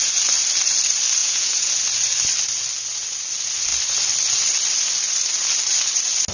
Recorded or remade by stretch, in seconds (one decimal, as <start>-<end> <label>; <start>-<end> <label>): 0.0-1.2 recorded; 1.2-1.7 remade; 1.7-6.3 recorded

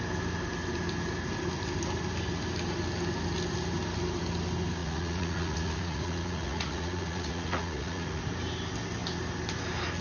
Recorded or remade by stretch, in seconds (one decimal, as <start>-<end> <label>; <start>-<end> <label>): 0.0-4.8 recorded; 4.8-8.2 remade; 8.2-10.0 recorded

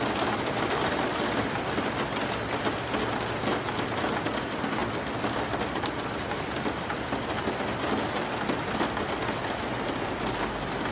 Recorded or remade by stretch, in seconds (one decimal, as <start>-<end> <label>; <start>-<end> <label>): 0.0-10.9 recorded